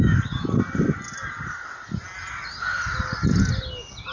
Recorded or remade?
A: recorded